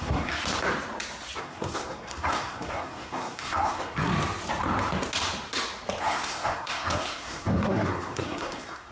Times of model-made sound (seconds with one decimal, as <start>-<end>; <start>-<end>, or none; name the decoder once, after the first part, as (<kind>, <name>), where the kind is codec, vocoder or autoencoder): 0.0-0.4 (codec, SNAC); 1.4-4.1; 6.0-8.9